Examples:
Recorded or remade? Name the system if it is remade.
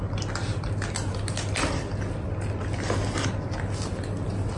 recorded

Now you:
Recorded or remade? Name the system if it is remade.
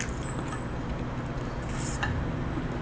recorded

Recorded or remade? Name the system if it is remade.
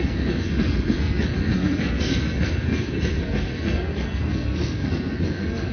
remade, codec, SNAC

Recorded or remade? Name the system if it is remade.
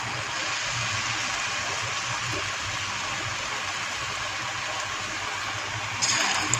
recorded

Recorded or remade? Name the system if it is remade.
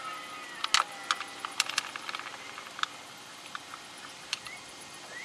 recorded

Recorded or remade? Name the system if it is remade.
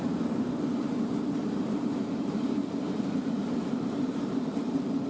remade, vocoder, BigVGAN v2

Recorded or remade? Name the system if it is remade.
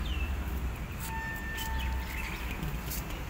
recorded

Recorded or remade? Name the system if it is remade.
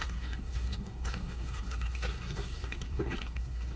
remade, codec, SNAC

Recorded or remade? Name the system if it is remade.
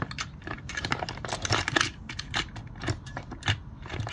recorded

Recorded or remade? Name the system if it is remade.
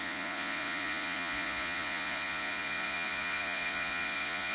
remade, vocoder, Vocos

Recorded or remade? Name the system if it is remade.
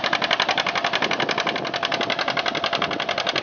recorded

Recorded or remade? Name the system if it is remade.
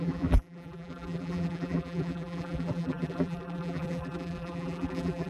remade, vocoder, BigVGAN v2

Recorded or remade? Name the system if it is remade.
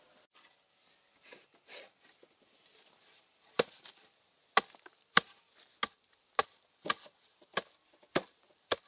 recorded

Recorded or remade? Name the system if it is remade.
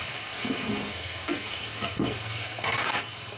remade, codec, SNAC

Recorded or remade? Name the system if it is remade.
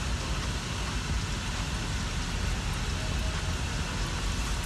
recorded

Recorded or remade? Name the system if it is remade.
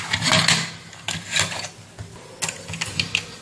recorded